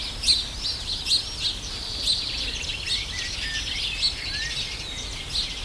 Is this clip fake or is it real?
real